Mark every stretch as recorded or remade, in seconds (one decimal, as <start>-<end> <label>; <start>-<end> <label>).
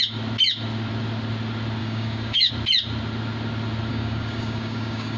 0.0-1.8 recorded; 1.8-2.5 remade; 2.5-3.9 recorded; 3.9-5.2 remade